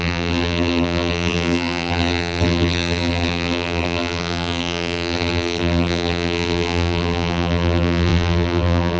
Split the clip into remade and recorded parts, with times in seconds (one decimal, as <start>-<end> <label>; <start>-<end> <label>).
0.0-9.0 remade